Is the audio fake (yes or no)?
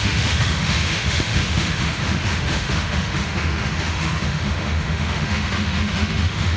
yes